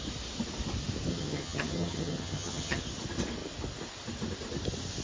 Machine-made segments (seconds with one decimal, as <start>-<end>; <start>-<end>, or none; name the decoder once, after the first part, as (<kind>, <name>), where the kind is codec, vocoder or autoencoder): 1.1-2.8 (vocoder, HiFi-GAN)